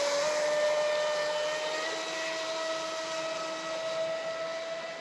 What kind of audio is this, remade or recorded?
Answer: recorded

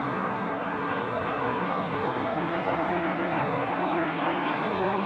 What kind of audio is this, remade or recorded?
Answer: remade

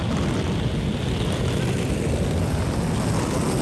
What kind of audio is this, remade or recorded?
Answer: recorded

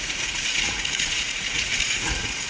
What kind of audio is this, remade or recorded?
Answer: remade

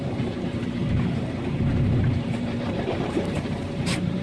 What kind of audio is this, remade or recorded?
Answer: remade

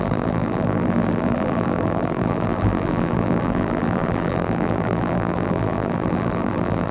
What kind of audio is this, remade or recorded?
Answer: remade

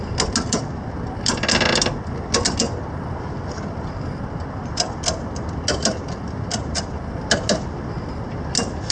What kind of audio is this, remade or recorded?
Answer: recorded